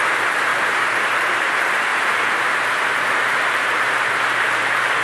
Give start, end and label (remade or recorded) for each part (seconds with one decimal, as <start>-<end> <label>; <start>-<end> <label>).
0.0-5.0 remade